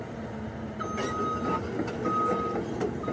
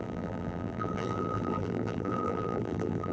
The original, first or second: first